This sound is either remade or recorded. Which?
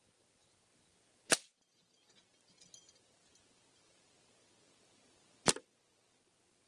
recorded